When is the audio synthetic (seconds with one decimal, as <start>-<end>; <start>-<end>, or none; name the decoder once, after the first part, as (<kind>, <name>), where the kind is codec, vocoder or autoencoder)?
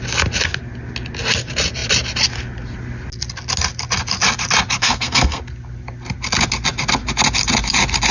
4.8-5.4 (codec, SNAC)